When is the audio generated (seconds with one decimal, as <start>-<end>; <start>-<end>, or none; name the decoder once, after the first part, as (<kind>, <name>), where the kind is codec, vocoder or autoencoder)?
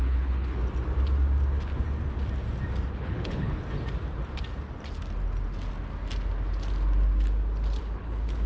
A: 0.0-0.6 (codec, HILCodec); 2.9-3.6; 7.8-8.5